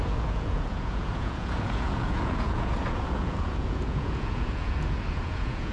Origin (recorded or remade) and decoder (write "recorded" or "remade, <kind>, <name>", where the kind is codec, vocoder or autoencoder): remade, vocoder, Vocos